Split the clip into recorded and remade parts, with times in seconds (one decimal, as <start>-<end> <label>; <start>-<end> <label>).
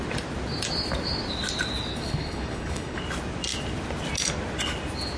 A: 0.0-1.9 recorded; 1.9-3.0 remade; 3.0-5.2 recorded